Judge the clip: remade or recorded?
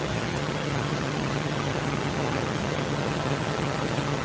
remade